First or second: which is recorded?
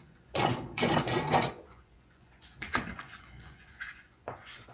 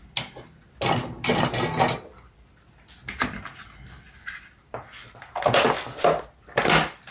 second